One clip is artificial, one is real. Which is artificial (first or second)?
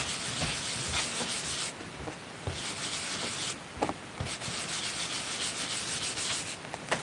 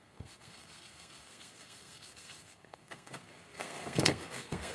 second